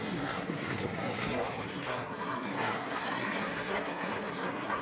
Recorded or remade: remade